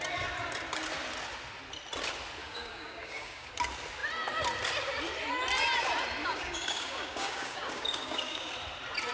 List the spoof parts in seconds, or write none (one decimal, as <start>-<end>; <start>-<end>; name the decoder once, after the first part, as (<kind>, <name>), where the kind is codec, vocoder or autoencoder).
2.4-3.5 (codec, DAC); 6.2-8.5